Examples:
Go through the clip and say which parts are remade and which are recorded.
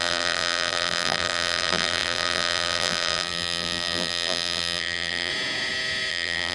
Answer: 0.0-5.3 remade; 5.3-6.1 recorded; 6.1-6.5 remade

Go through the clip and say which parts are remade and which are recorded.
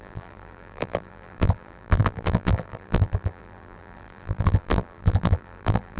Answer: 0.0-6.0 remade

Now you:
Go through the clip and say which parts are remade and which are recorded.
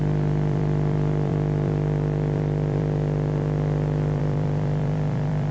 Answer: 0.0-5.5 remade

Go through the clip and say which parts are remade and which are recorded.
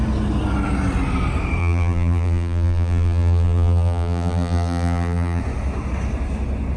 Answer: 0.0-1.6 recorded; 1.6-5.4 remade; 5.4-6.8 recorded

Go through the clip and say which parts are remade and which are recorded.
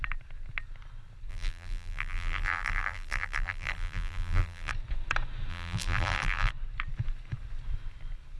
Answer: 0.0-1.3 recorded; 1.3-4.7 remade; 4.7-5.5 recorded; 5.5-6.5 remade; 6.5-8.4 recorded